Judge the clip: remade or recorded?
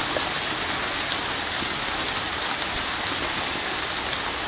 recorded